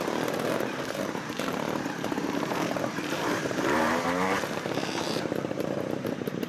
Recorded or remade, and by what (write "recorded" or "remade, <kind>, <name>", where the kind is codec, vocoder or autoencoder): remade, vocoder, BigVGAN v2